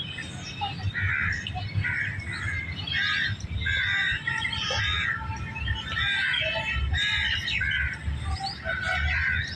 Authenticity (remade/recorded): recorded